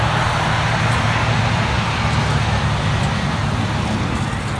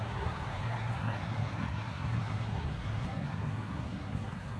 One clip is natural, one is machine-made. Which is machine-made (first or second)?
second